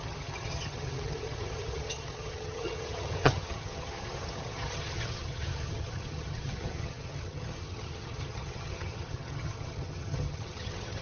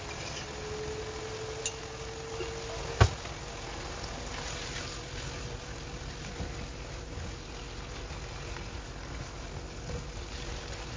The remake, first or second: first